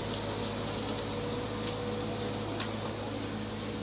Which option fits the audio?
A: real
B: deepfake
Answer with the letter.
A